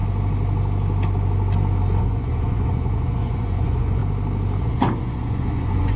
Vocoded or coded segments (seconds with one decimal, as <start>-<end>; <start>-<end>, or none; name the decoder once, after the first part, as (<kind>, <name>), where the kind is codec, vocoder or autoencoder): 2.0-4.0 (vocoder, Vocos); 4.6-6.0